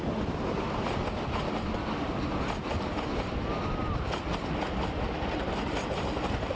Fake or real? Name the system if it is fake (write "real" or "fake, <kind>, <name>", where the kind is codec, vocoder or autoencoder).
real